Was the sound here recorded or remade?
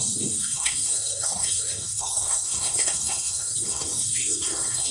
remade